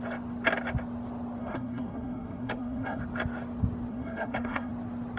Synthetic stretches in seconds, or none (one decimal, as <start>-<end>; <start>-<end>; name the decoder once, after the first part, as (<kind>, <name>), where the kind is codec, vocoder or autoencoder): 1.4-3.0 (codec, SNAC); 3.9-4.7